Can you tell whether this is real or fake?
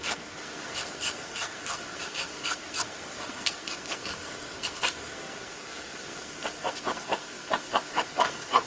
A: fake